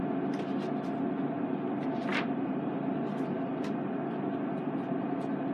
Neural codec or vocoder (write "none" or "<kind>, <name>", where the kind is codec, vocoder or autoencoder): none